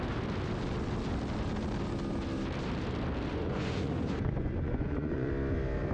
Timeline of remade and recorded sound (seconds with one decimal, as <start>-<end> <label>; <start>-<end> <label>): 0.0-3.3 recorded; 3.3-5.3 remade; 5.3-5.9 recorded